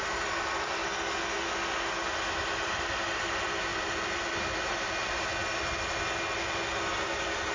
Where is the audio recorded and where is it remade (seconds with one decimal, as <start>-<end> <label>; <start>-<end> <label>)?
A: 0.0-0.8 remade; 0.8-3.2 recorded; 3.2-5.4 remade; 5.4-7.0 recorded; 7.0-7.5 remade